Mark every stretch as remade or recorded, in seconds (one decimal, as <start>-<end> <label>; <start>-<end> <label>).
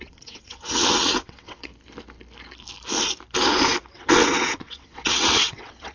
0.0-1.7 remade; 1.7-3.9 recorded; 3.9-5.9 remade